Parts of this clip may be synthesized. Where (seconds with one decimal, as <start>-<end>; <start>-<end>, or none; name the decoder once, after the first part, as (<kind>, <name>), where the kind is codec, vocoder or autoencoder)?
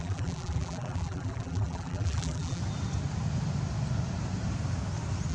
0.0-2.6 (vocoder, BigVGAN v2)